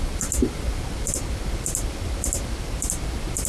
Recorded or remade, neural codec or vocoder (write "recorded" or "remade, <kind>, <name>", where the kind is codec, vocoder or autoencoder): recorded